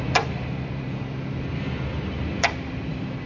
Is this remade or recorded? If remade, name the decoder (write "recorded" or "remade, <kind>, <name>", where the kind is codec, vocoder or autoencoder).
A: remade, vocoder, BigVGAN v2